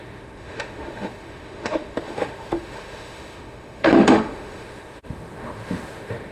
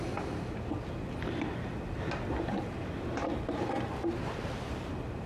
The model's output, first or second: first